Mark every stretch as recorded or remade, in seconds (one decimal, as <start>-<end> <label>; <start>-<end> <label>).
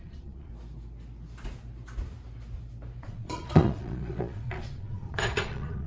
0.0-0.5 remade; 0.5-3.0 recorded; 3.0-5.9 remade